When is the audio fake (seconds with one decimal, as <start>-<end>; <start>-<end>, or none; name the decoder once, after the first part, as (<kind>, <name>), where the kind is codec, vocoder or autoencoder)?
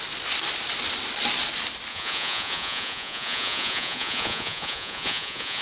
1.9-5.6 (vocoder, Vocos)